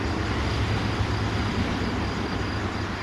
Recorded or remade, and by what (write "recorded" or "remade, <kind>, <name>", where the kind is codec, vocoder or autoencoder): recorded